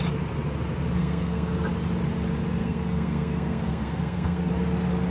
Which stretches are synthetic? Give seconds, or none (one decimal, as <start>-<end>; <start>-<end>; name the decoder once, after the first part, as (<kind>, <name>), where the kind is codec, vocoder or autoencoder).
1.0-1.7 (codec, SNAC); 2.6-4.5